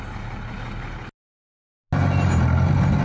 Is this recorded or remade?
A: recorded